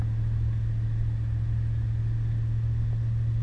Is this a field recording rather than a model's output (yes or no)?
yes